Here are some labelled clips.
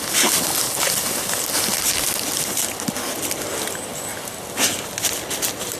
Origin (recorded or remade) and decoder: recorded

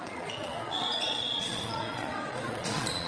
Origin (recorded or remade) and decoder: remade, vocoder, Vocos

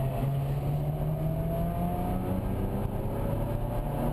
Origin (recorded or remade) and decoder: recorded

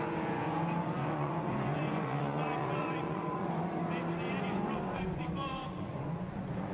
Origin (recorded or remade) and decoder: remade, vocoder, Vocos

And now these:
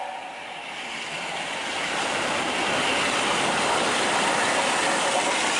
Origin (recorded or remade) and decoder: recorded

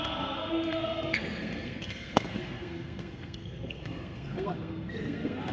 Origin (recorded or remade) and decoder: remade, codec, SNAC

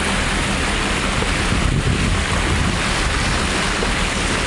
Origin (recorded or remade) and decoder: recorded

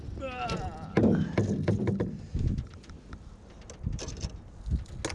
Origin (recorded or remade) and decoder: recorded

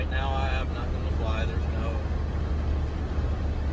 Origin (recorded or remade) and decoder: recorded